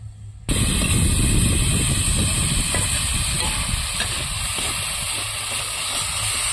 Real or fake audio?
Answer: real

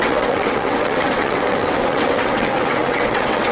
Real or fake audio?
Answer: fake